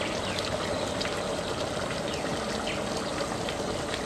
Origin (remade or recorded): recorded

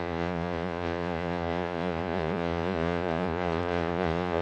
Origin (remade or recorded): remade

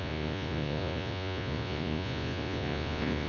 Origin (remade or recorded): remade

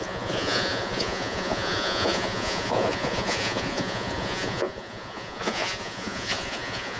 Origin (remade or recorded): remade